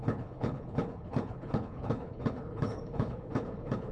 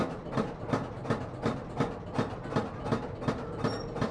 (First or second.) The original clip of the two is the second